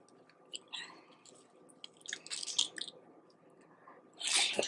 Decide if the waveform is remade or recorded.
recorded